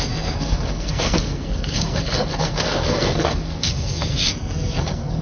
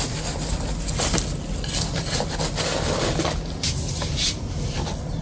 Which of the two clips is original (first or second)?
second